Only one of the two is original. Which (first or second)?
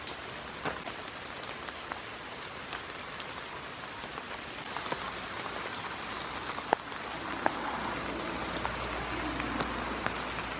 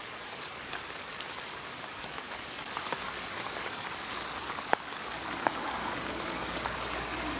first